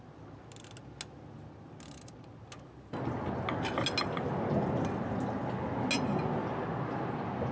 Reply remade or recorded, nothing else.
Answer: recorded